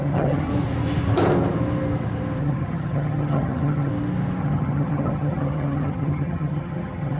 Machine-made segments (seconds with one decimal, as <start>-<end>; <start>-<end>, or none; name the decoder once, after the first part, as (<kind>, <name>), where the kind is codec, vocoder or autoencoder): 0.0-0.5 (vocoder, HiFi-GAN); 2.4-3.9; 4.4-7.2